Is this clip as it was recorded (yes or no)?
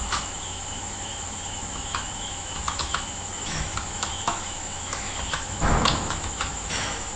no